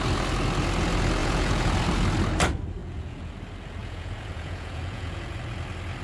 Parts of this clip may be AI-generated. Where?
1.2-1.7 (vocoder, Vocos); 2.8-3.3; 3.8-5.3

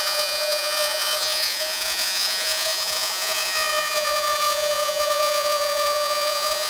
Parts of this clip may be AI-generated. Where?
0.0-6.7 (vocoder, Vocos)

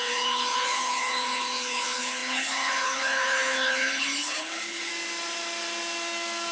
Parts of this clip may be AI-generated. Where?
0.0-4.9 (codec, HILCodec)

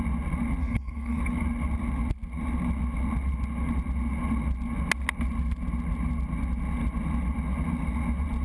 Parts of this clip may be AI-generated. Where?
0.6-1.2 (codec, SNAC)

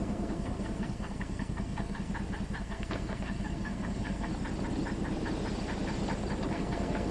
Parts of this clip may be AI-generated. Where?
0.0-2.1 (codec, SNAC); 2.6-4.3; 6.5-7.1

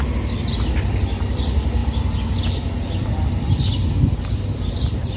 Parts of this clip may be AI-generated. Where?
none

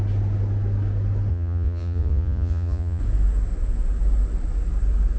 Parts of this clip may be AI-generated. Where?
1.3-3.0 (vocoder, Vocos)